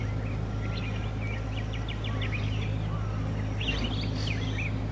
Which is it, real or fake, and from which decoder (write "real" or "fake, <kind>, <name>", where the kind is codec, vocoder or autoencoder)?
fake, vocoder, BigVGAN v2